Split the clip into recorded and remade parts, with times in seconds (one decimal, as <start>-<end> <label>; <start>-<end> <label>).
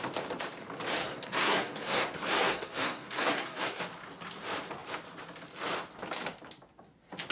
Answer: 0.0-1.0 recorded; 1.0-3.8 remade; 3.8-7.3 recorded